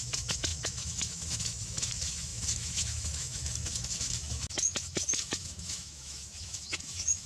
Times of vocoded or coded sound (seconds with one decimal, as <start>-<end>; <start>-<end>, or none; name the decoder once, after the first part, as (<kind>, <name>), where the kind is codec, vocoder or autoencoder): 0.0-7.3 (autoencoder, DAC-VAE)